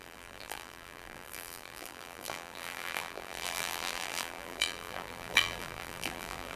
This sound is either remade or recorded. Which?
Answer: remade